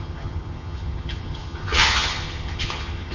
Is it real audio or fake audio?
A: fake